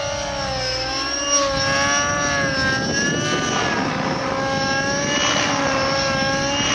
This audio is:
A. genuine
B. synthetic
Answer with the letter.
A